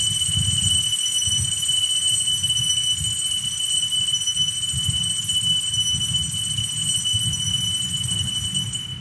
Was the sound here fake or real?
real